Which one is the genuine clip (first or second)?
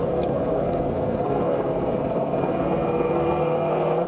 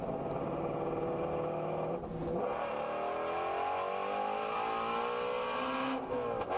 second